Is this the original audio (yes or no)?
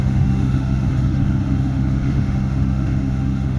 no